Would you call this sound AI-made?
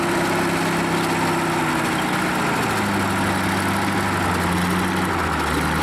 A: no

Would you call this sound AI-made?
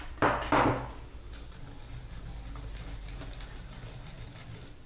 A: no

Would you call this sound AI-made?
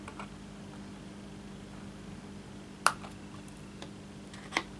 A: no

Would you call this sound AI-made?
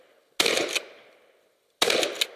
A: no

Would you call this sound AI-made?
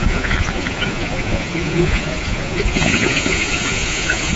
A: yes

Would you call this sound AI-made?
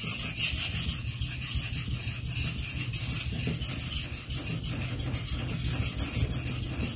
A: no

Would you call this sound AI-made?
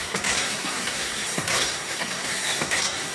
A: yes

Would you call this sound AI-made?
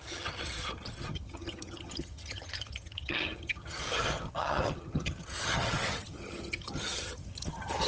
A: yes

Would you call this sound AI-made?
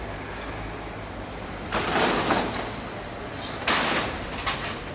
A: no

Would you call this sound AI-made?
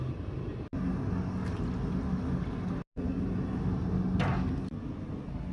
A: no